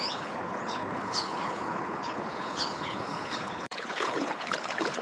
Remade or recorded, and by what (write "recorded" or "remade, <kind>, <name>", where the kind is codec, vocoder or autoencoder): remade, codec, HILCodec